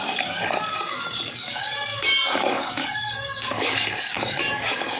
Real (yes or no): no